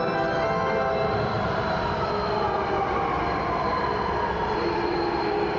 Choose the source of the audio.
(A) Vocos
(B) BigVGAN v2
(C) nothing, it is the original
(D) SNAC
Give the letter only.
C